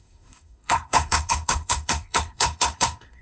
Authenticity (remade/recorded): remade